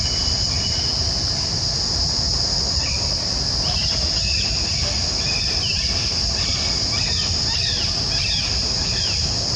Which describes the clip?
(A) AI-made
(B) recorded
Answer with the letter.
B